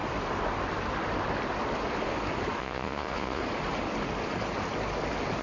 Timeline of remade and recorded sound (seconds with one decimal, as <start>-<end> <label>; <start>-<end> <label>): 0.0-2.6 recorded; 2.6-3.4 remade; 3.4-5.4 recorded